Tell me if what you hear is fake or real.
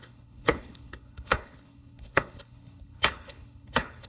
fake